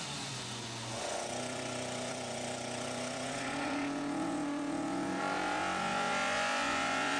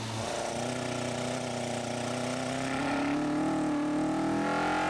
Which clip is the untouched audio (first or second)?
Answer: second